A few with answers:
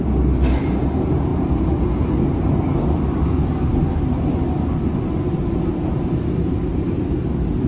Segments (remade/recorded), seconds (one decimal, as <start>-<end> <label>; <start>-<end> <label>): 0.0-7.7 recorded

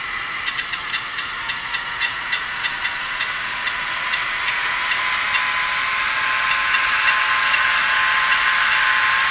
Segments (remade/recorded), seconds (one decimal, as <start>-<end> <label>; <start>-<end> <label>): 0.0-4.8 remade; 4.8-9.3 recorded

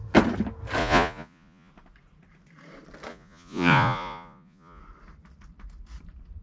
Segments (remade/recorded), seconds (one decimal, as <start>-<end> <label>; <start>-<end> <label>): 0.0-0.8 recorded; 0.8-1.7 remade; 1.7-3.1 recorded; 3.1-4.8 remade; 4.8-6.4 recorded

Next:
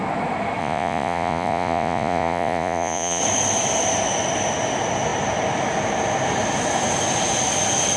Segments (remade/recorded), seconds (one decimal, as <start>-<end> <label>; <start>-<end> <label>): 0.0-0.6 recorded; 0.6-3.2 remade; 3.2-8.0 recorded

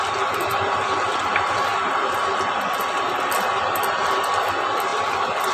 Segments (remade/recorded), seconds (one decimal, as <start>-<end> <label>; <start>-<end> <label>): 0.0-5.5 recorded